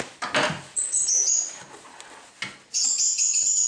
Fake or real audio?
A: real